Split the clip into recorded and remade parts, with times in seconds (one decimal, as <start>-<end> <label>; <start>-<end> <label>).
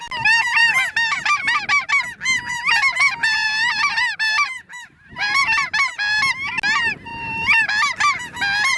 0.0-2.9 recorded; 2.9-5.7 remade; 5.7-7.1 recorded; 7.1-7.7 remade; 7.7-8.8 recorded